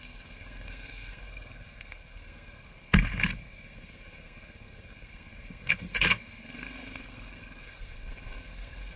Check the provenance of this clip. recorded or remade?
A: remade